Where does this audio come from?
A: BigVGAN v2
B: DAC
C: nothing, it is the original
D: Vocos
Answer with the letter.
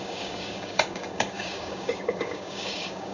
B